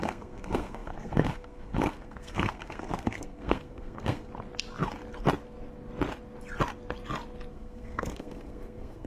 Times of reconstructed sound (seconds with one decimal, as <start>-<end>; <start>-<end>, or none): 0.0-4.3; 7.5-9.1